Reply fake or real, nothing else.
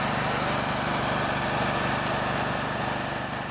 real